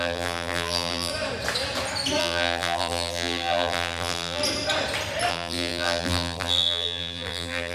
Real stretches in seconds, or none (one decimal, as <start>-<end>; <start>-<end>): 1.1-2.2; 4.4-5.3